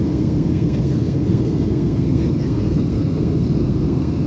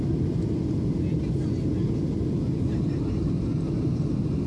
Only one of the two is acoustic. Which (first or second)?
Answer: second